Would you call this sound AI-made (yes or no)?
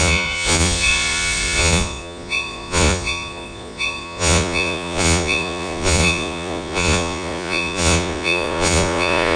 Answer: yes